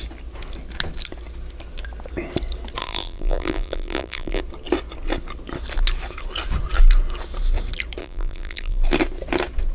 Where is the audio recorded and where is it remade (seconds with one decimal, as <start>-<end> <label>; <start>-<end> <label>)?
0.0-2.8 recorded; 2.8-4.4 remade; 4.4-8.0 recorded; 8.0-8.8 remade; 8.8-9.7 recorded